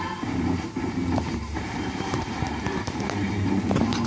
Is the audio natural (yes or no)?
no